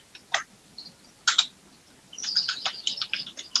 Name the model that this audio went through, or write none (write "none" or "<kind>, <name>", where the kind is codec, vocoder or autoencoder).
none